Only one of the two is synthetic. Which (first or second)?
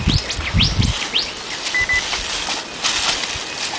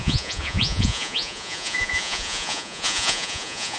second